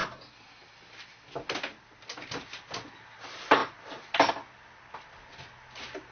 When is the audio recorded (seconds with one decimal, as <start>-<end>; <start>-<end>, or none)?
0.0-6.1